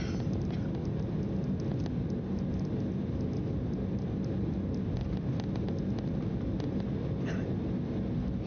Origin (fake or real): real